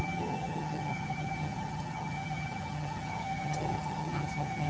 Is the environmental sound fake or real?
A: fake